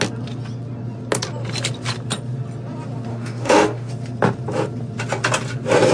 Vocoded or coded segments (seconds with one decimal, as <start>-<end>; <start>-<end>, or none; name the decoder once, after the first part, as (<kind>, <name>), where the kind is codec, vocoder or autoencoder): 3.1-3.9 (autoencoder, DAC-VAE)